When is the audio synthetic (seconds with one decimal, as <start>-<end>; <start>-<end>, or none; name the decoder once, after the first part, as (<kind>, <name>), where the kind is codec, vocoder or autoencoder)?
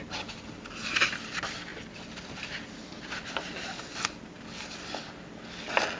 none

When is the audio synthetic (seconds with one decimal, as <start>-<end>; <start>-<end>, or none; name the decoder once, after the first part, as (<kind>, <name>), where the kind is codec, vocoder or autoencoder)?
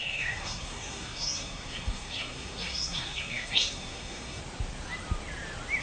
0.0-4.4 (codec, SNAC)